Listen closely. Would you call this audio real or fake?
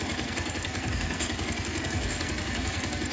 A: fake